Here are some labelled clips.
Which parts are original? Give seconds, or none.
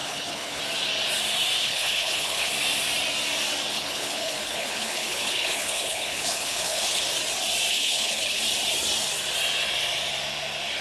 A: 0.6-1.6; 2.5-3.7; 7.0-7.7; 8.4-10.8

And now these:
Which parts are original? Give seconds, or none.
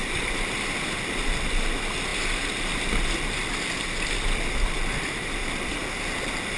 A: 0.0-6.6